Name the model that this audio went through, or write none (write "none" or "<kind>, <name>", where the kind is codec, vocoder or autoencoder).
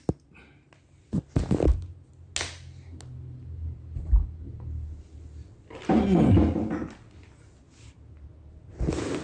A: none